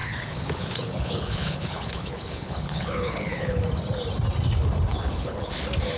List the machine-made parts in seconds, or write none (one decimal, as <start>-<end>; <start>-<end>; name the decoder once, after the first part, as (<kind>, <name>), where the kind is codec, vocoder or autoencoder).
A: 0.0-3.6 (codec, HILCodec); 4.9-5.5

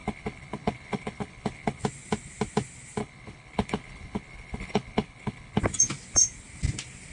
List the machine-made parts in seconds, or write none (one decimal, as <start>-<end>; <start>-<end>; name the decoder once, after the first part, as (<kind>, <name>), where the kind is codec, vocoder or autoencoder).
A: 0.0-1.8 (codec, HILCodec); 3.0-5.6